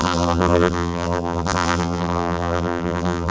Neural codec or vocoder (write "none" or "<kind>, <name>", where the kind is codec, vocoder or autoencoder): vocoder, BigVGAN v2